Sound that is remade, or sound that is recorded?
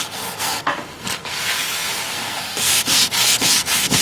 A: remade